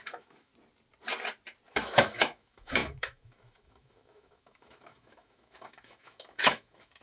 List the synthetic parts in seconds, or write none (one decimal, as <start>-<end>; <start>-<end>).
0.0-0.5; 1.7-7.0